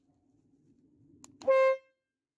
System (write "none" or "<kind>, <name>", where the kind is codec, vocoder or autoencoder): none